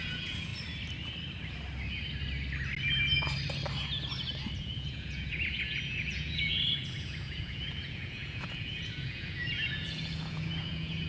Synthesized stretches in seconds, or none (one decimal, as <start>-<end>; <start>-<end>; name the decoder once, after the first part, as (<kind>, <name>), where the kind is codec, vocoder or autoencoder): 0.0-0.5 (vocoder, Vocos); 4.6-11.1